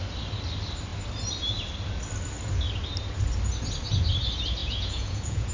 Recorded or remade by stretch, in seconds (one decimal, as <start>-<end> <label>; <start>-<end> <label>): 0.0-4.6 recorded; 4.6-5.5 remade